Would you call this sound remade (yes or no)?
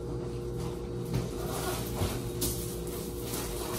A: no